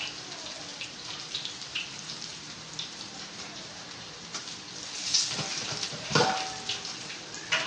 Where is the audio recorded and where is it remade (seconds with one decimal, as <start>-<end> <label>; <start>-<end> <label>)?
0.0-0.7 recorded; 0.7-4.6 remade; 4.6-5.5 recorded; 5.5-6.2 remade; 6.2-7.7 recorded